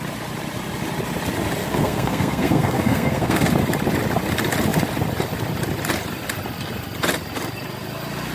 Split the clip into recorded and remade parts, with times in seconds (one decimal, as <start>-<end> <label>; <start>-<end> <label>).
0.0-1.6 recorded; 1.6-3.5 remade; 3.5-8.3 recorded